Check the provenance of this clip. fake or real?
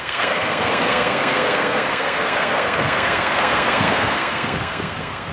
fake